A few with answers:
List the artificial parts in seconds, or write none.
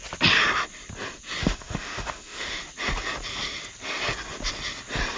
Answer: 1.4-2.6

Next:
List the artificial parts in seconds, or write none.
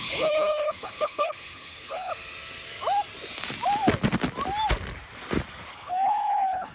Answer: 0.0-2.1; 5.7-6.7